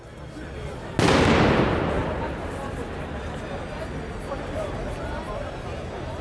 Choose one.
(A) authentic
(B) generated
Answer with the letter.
A